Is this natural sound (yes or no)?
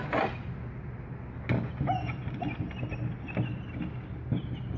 yes